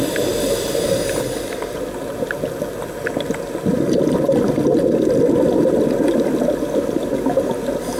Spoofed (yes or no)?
no